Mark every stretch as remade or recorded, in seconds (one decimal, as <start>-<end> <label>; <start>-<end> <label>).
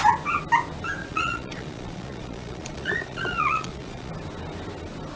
0.0-1.0 recorded; 1.0-4.1 remade; 4.1-5.2 recorded